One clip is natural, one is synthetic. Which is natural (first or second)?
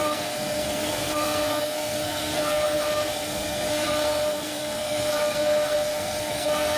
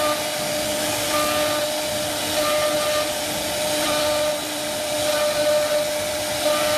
second